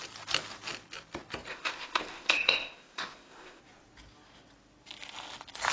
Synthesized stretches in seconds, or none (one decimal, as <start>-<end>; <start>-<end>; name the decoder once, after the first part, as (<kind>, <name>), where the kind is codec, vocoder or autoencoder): 1.5-3.6 (codec, ZipCodec)